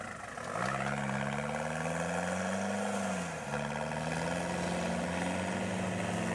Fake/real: real